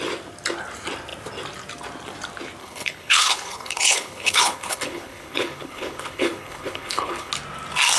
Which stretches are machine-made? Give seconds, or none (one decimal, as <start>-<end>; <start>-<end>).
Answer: 2.6-7.3